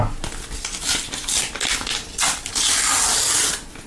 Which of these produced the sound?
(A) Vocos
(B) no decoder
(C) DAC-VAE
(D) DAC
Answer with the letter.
B